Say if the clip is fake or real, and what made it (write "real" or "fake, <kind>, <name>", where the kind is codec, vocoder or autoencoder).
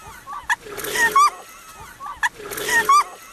real